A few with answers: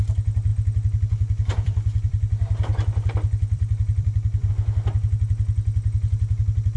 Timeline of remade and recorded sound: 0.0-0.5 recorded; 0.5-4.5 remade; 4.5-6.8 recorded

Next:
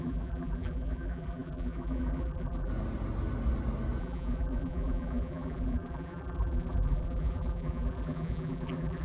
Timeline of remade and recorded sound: 0.0-2.7 remade; 2.7-4.0 recorded; 4.0-9.0 remade

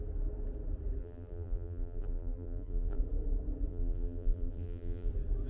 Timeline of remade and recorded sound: 0.0-1.0 recorded; 1.0-3.0 remade; 3.0-3.7 recorded; 3.7-5.1 remade; 5.1-5.5 recorded

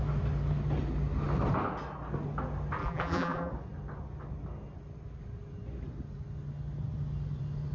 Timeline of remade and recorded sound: 0.0-2.8 recorded; 2.8-3.5 remade; 3.5-7.7 recorded